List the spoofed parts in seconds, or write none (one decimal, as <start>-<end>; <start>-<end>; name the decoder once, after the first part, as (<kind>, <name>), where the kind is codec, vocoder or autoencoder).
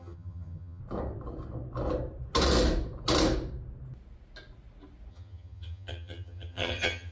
0.0-0.8 (vocoder, HiFi-GAN); 5.1-7.1